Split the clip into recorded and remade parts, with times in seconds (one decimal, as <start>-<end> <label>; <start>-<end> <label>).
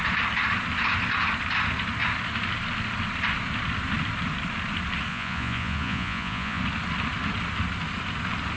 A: 0.0-5.1 recorded; 5.1-6.6 remade; 6.6-8.6 recorded